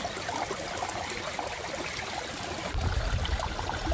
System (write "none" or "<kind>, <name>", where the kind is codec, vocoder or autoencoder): none